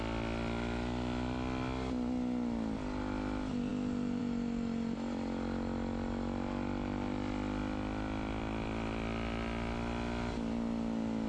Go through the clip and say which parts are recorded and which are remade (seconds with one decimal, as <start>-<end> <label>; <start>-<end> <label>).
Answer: 0.0-11.3 recorded